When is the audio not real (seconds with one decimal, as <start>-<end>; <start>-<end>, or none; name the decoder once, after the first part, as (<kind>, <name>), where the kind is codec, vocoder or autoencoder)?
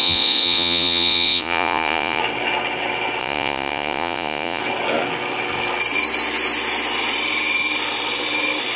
0.0-2.2 (vocoder, Vocos); 3.2-4.6